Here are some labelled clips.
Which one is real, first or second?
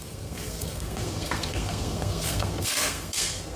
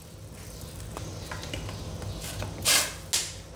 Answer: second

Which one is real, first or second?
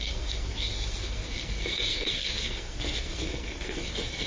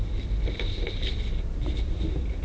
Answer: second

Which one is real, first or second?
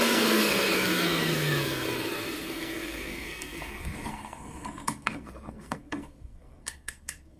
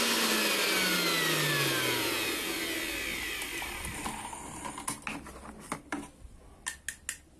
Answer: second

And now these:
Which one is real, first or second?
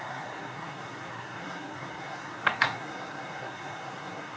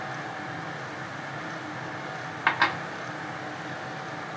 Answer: second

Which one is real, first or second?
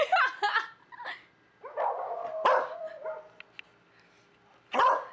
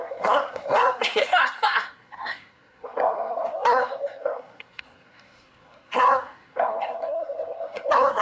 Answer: first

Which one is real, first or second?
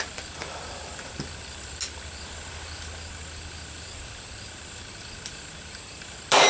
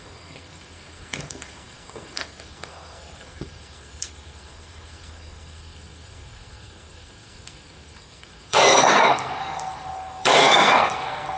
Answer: first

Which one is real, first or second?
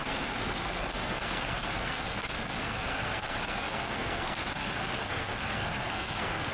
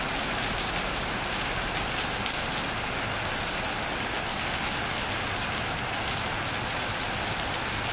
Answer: second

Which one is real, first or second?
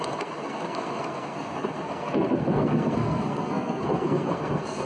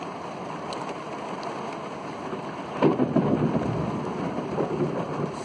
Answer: second